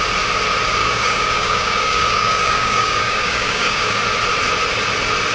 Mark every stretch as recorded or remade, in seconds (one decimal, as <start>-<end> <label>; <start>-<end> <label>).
0.0-0.8 recorded; 0.8-4.0 remade; 4.0-5.3 recorded